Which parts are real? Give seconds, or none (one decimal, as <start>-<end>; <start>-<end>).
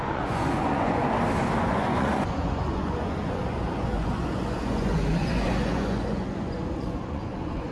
1.0-1.6